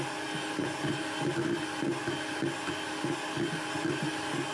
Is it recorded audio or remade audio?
recorded